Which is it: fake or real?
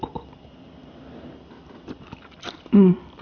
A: real